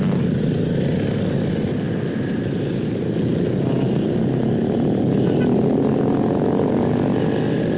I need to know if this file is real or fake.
real